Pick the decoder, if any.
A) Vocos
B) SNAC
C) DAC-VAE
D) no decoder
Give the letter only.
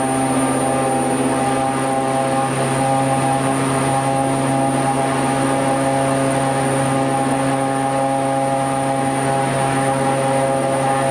D